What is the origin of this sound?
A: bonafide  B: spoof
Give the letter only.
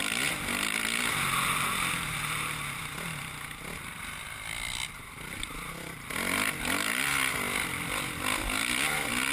A